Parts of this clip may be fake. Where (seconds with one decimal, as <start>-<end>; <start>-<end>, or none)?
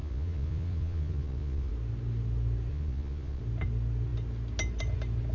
0.0-1.7; 2.7-3.4